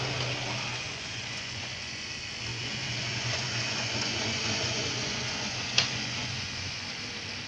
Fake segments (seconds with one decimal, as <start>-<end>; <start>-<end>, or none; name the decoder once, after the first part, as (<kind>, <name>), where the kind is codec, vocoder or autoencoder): 0.7-2.1 (vocoder, Vocos); 2.5-7.0